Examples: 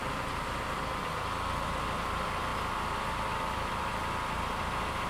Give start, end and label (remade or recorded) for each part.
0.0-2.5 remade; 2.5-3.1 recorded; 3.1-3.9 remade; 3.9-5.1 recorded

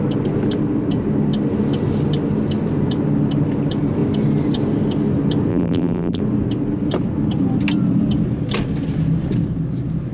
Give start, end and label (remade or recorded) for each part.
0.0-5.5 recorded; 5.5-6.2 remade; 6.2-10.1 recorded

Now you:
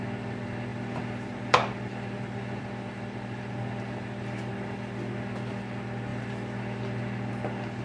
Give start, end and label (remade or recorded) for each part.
0.0-0.7 recorded; 0.7-4.5 remade; 4.5-6.1 recorded; 6.1-6.8 remade; 6.8-7.8 recorded

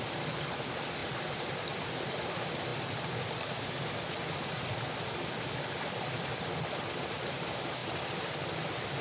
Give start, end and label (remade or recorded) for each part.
0.0-1.0 recorded; 1.0-2.3 remade; 2.3-7.8 recorded; 7.8-8.5 remade; 8.5-9.0 recorded